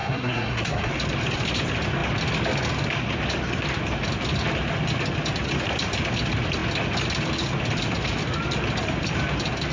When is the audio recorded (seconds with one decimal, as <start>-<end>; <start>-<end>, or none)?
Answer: 0.9-9.7